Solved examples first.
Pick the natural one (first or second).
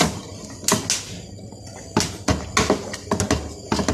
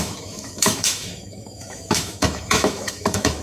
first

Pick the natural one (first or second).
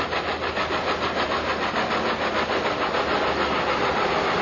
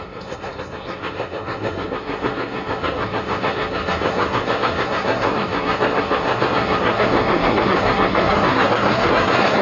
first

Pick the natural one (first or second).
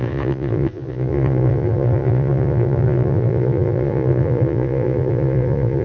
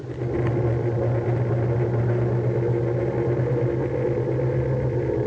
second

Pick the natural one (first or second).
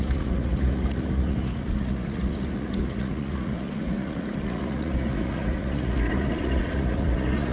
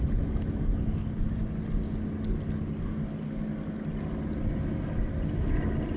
second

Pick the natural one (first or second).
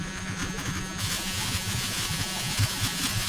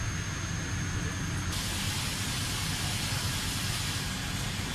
second